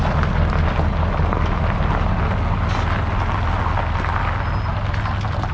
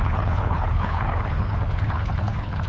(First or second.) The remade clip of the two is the second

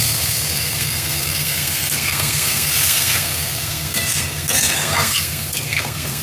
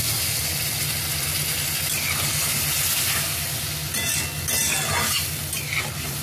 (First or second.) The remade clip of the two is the first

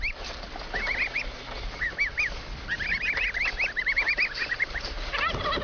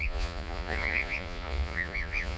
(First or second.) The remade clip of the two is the second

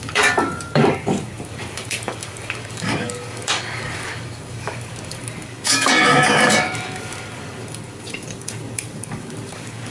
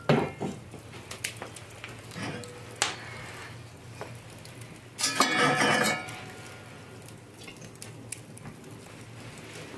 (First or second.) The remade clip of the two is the first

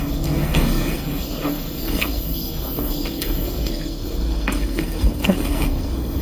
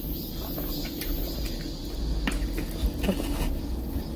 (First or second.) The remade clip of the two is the first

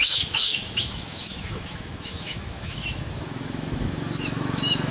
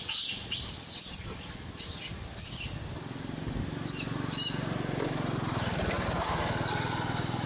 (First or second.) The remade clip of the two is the first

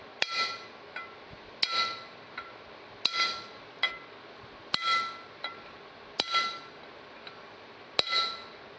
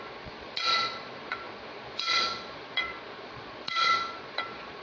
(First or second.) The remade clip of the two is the second